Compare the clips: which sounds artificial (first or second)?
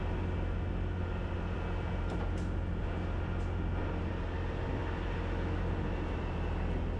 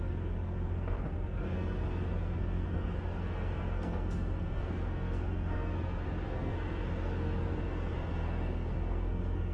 second